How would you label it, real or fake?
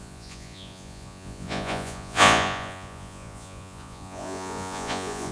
fake